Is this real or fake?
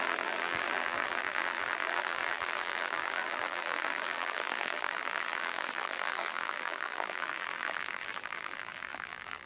fake